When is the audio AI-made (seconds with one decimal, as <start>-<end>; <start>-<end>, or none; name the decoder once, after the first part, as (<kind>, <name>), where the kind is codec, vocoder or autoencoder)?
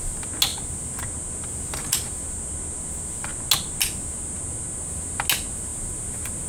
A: none